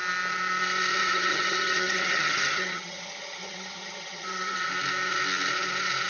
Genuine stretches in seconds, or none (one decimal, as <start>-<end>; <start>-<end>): 0.0-1.0; 4.7-6.1